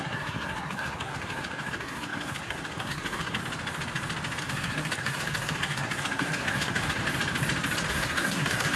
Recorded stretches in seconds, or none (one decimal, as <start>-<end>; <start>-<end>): 3.4-4.4; 7.0-7.9